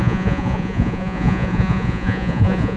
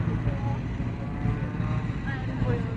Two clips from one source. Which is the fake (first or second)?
first